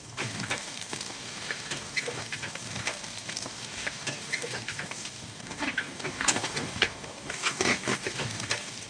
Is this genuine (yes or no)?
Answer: no